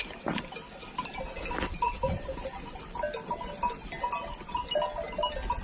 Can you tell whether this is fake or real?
real